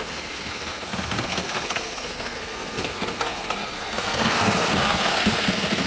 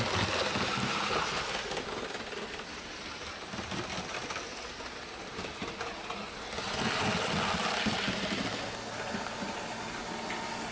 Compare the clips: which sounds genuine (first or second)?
second